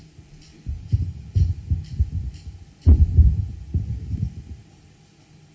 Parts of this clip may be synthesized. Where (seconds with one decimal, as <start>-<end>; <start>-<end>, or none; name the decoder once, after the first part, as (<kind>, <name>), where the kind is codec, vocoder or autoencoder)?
0.0-5.5 (vocoder, BigVGAN v2)